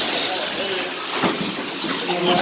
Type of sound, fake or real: real